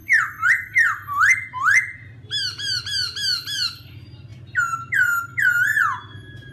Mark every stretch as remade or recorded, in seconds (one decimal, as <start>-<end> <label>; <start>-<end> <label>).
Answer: 0.0-6.5 recorded